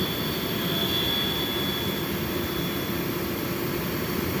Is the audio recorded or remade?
recorded